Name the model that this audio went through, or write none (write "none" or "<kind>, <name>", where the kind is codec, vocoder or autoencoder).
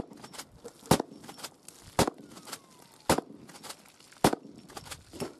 none